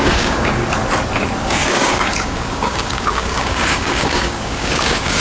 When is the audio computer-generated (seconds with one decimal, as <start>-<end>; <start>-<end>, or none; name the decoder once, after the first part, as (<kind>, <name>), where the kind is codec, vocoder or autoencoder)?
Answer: 0.0-0.6 (codec, DAC); 1.4-5.2